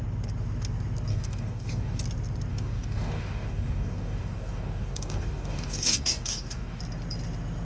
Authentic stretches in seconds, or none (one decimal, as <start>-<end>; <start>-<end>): 0.0-1.1; 2.0-2.5; 6.8-7.6